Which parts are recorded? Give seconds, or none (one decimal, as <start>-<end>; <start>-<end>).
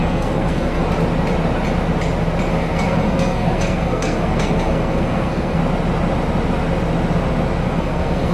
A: 0.8-2.5; 5.6-7.6